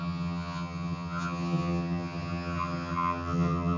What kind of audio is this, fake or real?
fake